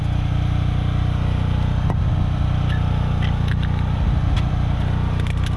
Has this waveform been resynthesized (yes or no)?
no